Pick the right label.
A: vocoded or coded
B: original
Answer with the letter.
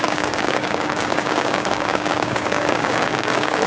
A